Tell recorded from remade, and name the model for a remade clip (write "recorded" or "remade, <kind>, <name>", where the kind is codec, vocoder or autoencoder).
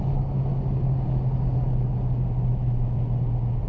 recorded